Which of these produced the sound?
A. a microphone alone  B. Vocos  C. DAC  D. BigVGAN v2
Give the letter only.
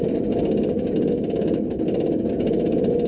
A